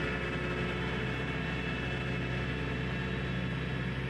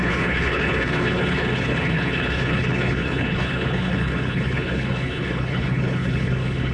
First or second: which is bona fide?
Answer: first